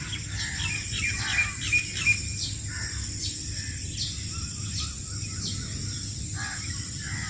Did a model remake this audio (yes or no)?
no